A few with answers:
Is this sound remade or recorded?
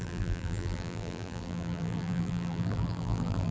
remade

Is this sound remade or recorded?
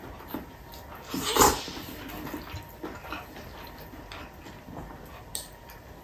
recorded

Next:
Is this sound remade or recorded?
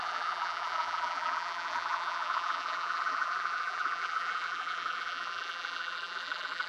remade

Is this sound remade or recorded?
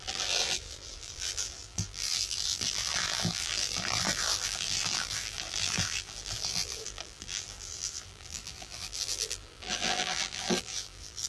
remade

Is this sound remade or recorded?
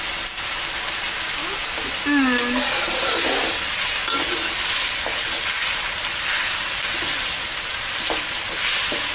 recorded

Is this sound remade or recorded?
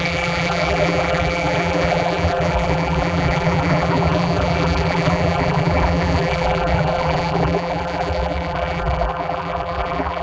remade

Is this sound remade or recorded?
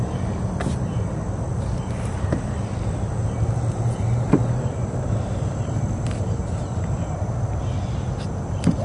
remade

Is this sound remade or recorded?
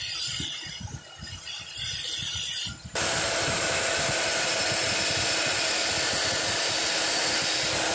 recorded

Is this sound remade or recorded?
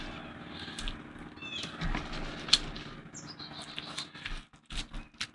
recorded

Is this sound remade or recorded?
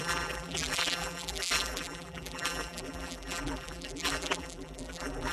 remade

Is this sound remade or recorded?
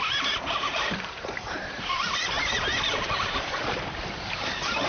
remade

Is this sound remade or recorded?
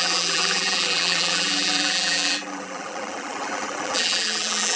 remade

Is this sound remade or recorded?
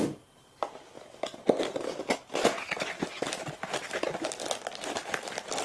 recorded